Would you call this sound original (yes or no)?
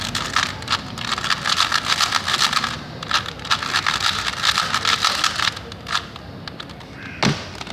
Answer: yes